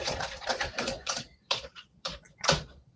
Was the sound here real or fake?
fake